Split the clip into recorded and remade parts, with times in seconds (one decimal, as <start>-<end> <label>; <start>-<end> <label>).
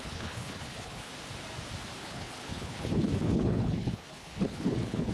0.0-1.1 remade; 1.1-2.0 recorded; 2.0-5.1 remade